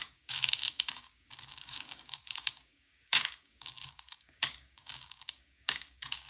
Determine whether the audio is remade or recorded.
remade